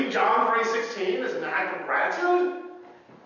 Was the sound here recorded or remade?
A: recorded